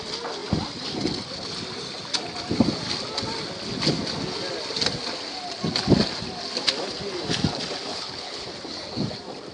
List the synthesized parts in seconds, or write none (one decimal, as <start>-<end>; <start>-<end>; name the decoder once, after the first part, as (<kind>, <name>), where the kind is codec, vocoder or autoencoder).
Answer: 7.9-8.5 (codec, HILCodec)